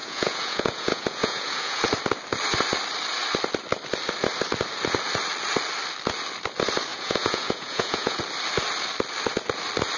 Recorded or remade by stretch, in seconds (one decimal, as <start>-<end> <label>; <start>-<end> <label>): 0.0-1.8 remade; 1.8-6.9 recorded; 6.9-8.2 remade; 8.2-10.0 recorded